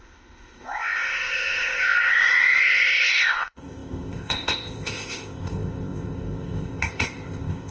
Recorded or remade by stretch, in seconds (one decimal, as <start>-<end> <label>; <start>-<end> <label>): 0.0-7.7 remade